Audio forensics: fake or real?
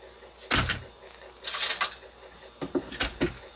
real